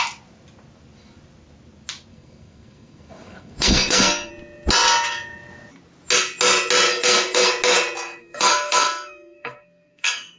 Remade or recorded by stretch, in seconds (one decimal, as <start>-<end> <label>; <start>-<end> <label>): 0.0-2.1 recorded; 2.1-4.3 remade; 4.3-6.9 recorded; 6.9-7.5 remade; 7.5-8.2 recorded; 8.2-10.4 remade